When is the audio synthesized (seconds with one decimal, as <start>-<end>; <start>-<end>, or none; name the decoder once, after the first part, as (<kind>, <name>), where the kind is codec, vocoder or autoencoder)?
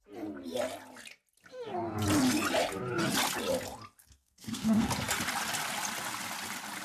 4.0-4.9 (codec, SNAC)